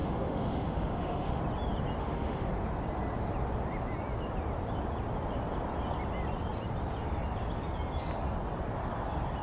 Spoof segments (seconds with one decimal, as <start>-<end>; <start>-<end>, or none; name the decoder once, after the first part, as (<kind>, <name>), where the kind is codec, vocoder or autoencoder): 0.0-1.4 (autoencoder, DAC-VAE); 2.0-2.5